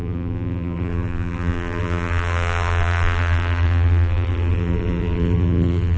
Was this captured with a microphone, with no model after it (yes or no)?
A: no